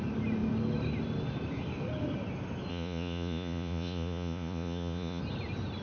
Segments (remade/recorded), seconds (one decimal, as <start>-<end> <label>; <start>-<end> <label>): 0.0-2.7 recorded; 2.7-5.2 remade; 5.2-5.8 recorded